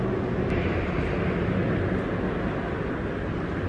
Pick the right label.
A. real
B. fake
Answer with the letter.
A